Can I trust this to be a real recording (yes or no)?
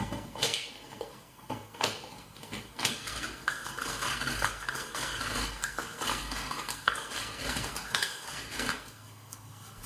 no